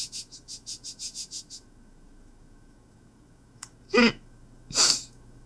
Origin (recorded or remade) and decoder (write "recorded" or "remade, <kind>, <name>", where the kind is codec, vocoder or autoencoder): remade, autoencoder, DAC-VAE